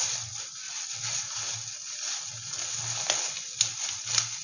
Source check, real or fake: real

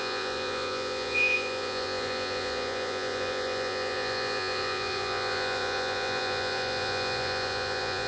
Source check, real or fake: fake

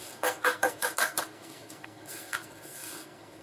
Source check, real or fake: fake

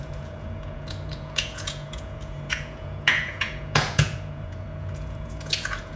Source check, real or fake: fake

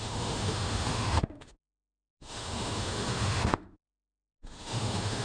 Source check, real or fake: fake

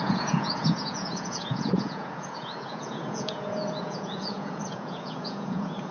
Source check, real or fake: fake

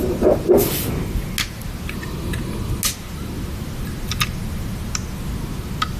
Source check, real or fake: real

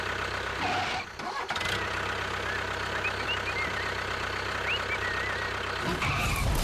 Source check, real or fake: real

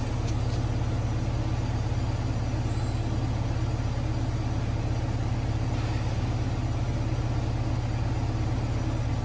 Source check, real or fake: real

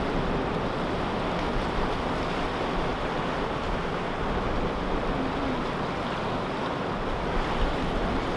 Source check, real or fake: real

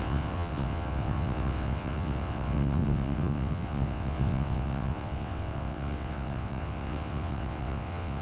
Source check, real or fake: fake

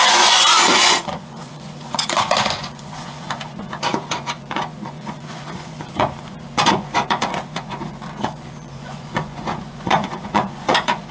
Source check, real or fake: fake